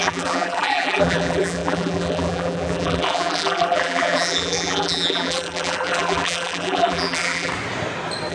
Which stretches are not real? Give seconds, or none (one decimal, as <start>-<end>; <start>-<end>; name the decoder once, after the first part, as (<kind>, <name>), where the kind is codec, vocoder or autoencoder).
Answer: 0.0-7.5 (vocoder, BigVGAN v2)

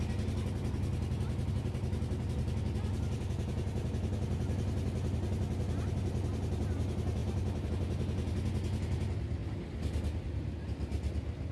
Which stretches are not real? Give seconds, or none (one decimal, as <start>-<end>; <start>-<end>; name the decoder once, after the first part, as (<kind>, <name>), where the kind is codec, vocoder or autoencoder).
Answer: 7.2-7.7 (vocoder, BigVGAN v2)

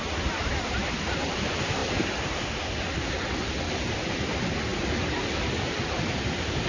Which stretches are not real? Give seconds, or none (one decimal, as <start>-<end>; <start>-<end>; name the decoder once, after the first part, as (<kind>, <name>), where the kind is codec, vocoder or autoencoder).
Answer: none

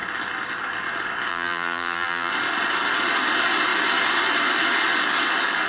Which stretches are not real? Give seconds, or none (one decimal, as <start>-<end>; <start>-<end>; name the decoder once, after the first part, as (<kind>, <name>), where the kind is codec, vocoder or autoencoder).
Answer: 1.3-2.3 (vocoder, BigVGAN v2)